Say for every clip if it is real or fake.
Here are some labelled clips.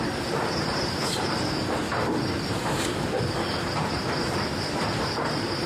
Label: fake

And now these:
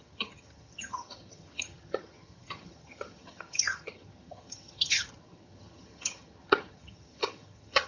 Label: fake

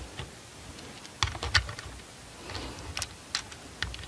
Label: real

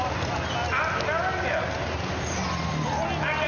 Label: real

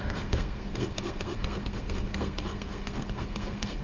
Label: fake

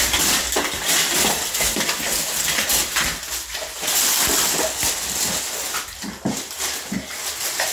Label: real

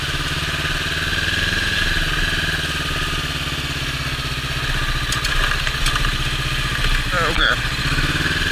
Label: real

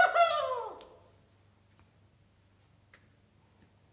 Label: real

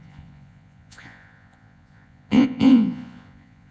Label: fake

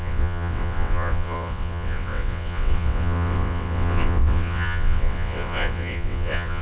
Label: fake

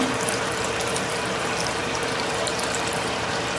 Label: fake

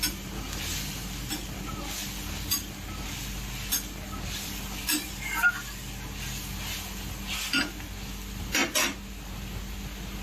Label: real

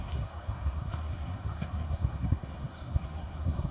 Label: fake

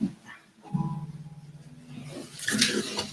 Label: real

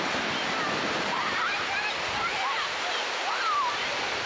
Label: real